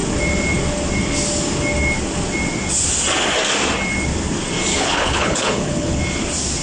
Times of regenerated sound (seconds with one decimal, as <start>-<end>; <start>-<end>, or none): 4.7-6.0